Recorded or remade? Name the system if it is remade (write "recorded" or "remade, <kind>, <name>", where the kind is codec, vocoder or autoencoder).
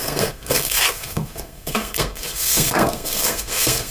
remade, codec, SNAC